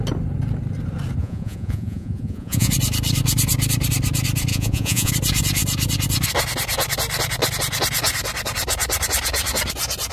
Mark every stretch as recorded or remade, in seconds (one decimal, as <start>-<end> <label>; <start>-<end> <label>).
0.0-1.2 recorded; 1.2-2.7 remade; 2.7-4.5 recorded; 4.5-5.1 remade; 5.1-10.1 recorded